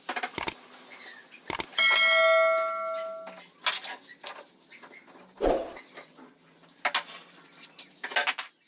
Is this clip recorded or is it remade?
recorded